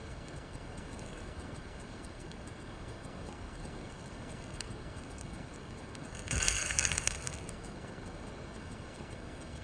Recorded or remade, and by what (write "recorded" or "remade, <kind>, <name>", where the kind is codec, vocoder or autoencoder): remade, codec, SNAC